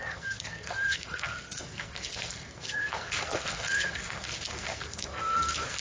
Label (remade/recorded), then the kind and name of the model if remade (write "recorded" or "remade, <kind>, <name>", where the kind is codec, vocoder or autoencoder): remade, codec, SNAC